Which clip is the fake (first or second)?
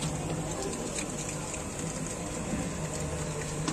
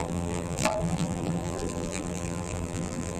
second